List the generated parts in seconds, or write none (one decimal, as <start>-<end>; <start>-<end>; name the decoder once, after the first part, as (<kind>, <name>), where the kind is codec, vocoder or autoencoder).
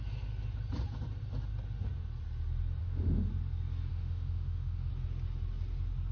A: 2.8-3.3 (autoencoder, DAC-VAE); 3.9-4.9